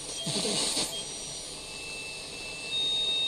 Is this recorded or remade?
recorded